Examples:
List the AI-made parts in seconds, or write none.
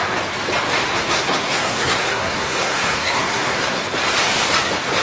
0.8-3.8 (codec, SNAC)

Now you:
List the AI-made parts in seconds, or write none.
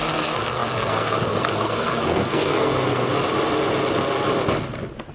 0.0-3.1 (codec, SNAC)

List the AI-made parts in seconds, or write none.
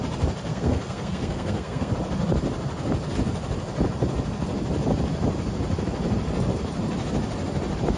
0.5-1.9 (codec, SNAC)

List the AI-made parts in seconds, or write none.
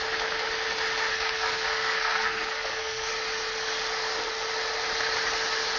1.1-3.1 (codec, SNAC)